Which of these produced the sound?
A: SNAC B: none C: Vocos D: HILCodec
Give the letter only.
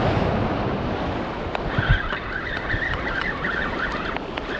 B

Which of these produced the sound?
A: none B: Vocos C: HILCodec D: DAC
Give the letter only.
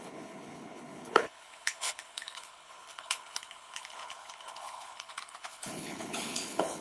C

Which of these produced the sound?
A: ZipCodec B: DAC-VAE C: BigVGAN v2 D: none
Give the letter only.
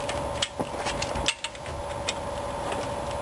D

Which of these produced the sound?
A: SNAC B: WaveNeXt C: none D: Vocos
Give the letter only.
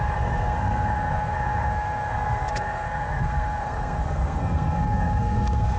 A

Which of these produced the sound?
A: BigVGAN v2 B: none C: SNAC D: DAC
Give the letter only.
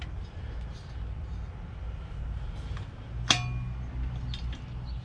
B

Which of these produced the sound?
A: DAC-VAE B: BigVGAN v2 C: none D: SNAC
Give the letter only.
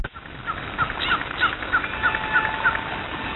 C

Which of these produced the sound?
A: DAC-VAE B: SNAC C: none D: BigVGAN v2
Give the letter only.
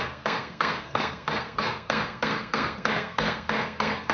B